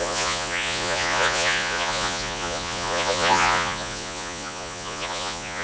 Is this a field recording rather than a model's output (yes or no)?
no